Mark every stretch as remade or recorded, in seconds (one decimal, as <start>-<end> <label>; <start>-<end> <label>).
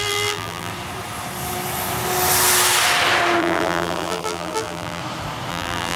0.0-0.7 remade; 0.7-3.4 recorded; 3.4-5.0 remade; 5.0-5.5 recorded; 5.5-6.0 remade